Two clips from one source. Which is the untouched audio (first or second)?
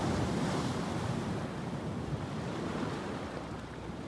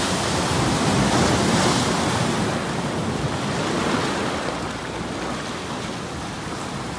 second